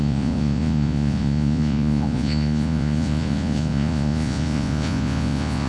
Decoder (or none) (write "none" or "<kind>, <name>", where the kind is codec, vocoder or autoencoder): vocoder, Vocos